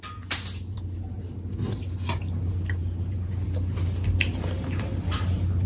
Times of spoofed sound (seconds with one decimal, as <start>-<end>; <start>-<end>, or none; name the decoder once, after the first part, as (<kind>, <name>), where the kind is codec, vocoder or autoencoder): 2.8-3.3 (vocoder, BigVGAN v2)

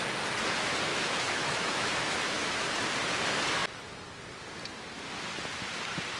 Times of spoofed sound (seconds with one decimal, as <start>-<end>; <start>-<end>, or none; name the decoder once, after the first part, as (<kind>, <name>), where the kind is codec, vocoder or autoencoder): 0.9-2.8 (autoencoder, DAC-VAE)

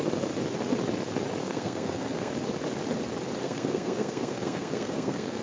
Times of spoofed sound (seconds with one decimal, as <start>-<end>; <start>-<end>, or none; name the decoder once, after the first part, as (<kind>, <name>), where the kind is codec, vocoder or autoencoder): 1.4-2.3 (codec, SNAC); 3.4-5.4

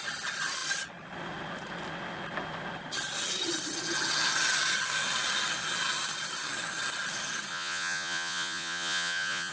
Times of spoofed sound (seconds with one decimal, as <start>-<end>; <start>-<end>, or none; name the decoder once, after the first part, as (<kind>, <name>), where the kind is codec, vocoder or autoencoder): 7.5-9.5 (vocoder, Vocos)